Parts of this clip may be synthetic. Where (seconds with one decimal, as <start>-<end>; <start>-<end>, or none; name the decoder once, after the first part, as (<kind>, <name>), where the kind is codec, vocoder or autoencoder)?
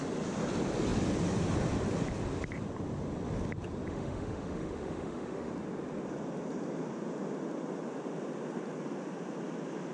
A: 3.9-5.5 (autoencoder, DAC-VAE)